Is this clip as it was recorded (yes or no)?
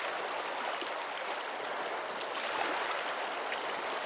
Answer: yes